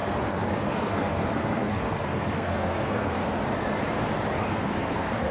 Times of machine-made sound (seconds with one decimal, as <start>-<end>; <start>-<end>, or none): 0.0-3.2; 4.5-5.3